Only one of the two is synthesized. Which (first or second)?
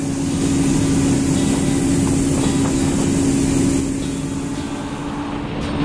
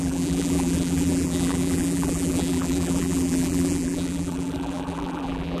second